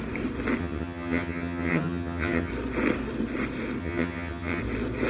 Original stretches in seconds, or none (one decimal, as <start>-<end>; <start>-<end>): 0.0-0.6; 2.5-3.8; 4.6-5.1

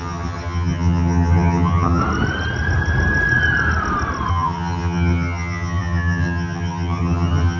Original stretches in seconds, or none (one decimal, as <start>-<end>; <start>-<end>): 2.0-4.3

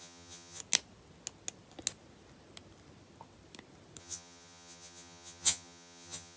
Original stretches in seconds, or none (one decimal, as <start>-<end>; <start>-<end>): 0.6-4.0

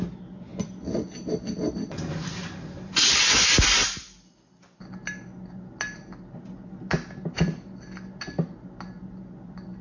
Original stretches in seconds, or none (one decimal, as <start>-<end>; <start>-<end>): 0.0-9.8

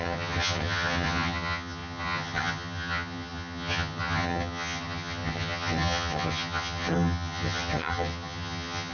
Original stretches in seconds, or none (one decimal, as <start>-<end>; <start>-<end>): none